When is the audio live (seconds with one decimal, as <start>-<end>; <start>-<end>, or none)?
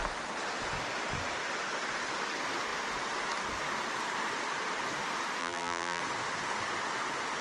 0.0-5.4; 6.0-7.4